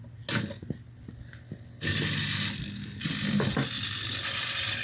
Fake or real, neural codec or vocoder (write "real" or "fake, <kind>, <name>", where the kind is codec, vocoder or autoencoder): real